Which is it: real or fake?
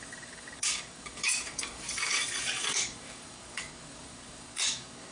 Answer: fake